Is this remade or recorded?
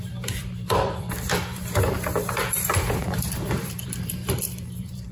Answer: remade